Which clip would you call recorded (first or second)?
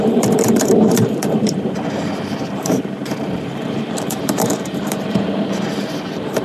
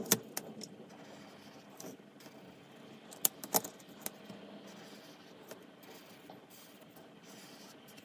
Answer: second